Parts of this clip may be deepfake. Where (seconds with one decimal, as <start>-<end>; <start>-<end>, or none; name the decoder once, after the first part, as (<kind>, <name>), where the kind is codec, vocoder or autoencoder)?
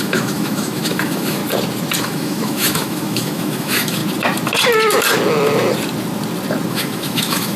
0.0-1.4 (autoencoder, DAC-VAE); 2.0-4.0; 6.7-7.6